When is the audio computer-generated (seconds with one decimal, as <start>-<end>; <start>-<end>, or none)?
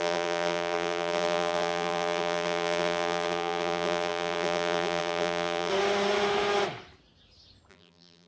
0.0-5.7; 7.7-8.3